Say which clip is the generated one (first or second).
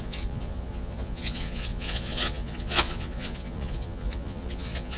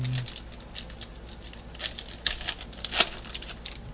first